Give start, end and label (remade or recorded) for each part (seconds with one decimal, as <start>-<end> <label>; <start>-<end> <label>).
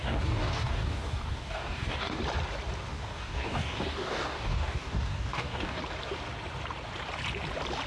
0.0-2.2 remade; 2.2-2.9 recorded; 2.9-5.8 remade; 5.8-7.9 recorded